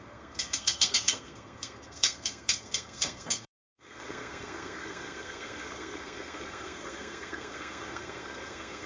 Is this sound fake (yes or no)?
yes